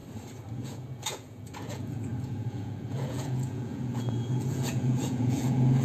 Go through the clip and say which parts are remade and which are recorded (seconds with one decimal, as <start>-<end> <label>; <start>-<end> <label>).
0.0-0.5 recorded; 0.5-5.8 remade